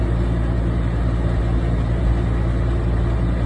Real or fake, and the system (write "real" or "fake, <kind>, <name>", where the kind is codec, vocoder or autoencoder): real